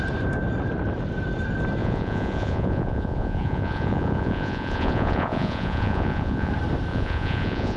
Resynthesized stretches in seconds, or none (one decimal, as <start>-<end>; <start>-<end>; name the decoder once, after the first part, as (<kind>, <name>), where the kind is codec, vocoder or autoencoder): 1.8-6.5 (vocoder, Vocos); 6.9-7.8